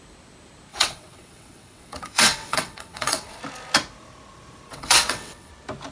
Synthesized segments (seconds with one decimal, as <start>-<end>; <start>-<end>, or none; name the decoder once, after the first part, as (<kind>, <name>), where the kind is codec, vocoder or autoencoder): 0.7-3.4 (vocoder, WaveNeXt); 4.7-5.5